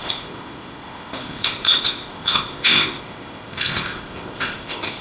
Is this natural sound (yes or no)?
no